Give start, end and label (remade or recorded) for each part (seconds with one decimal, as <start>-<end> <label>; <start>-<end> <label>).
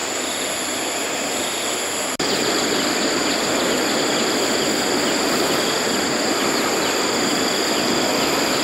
0.0-8.6 recorded